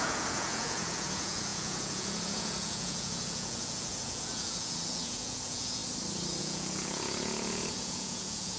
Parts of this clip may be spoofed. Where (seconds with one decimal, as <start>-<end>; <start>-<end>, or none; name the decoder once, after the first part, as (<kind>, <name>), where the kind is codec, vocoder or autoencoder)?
0.0-5.8 (vocoder, Vocos); 6.4-8.6